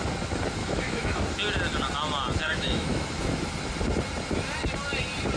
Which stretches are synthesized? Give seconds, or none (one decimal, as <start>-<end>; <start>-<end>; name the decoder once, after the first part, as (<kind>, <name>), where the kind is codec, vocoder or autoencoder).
0.6-1.2 (autoencoder, DAC-VAE); 2.4-3.4